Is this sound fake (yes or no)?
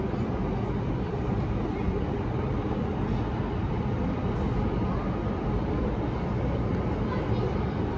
no